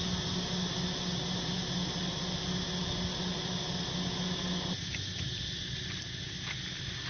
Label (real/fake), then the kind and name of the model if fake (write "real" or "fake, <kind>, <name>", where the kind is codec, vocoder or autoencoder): real